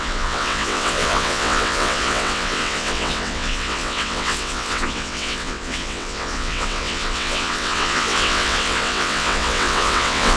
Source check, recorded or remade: remade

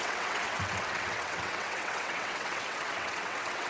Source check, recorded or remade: remade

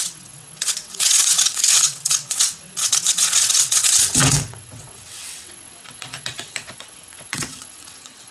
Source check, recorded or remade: remade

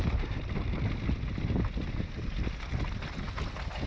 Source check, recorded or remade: recorded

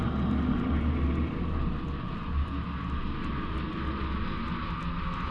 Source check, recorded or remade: recorded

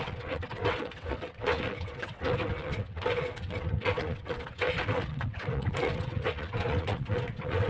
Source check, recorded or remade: remade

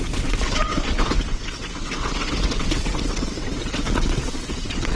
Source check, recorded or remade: remade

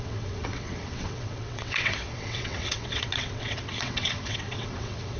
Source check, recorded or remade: remade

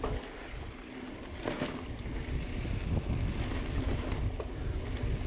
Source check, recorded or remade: recorded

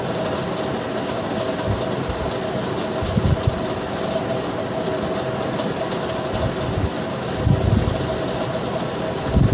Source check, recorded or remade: recorded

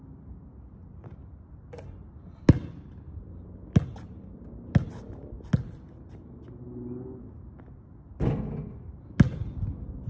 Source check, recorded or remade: recorded